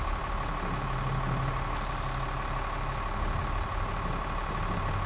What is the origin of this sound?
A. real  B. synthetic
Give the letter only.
A